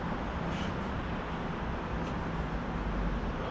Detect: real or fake real